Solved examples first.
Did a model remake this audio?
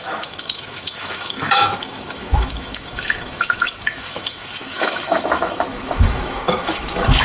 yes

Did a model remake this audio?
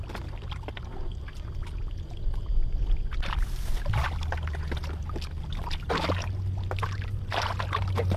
no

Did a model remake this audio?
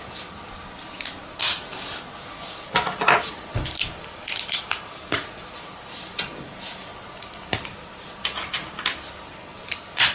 no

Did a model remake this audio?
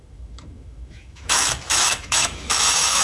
yes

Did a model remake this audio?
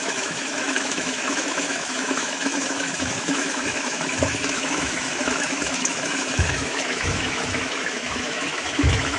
yes